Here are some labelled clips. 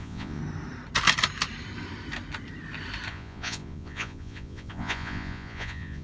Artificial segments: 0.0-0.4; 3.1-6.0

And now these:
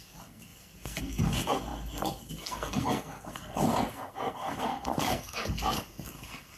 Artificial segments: 0.0-6.6

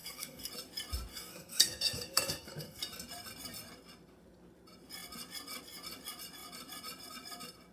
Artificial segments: 0.0-0.5; 1.1-2.8